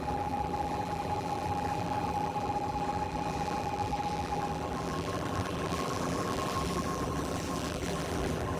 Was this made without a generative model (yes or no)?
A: no